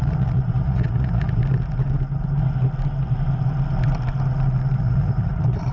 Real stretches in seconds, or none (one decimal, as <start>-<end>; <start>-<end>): 1.4-4.8